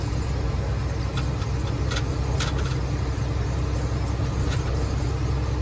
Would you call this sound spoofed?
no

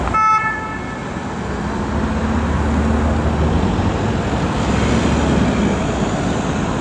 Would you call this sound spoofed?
no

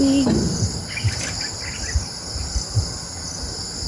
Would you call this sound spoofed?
no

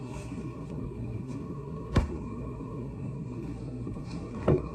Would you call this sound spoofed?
yes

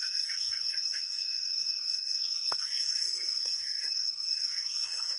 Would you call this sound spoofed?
yes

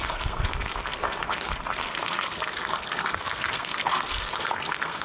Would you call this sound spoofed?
yes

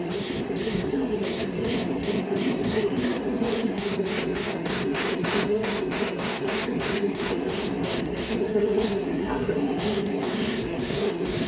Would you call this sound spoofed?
yes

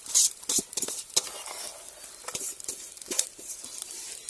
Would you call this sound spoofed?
no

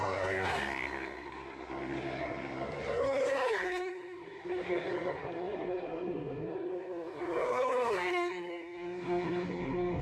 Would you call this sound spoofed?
yes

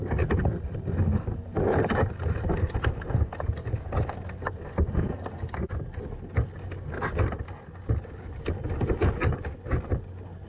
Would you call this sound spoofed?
no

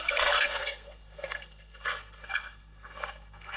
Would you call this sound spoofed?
yes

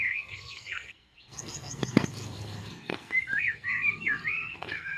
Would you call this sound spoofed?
yes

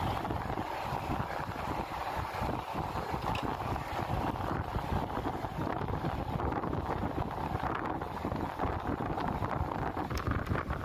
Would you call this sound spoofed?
no